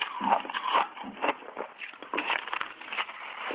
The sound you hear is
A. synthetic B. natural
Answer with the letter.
B